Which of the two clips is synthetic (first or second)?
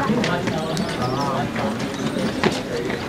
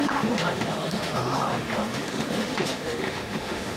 second